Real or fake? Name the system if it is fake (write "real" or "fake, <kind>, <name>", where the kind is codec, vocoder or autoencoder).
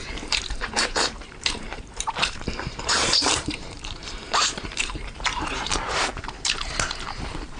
fake, vocoder, BigVGAN v2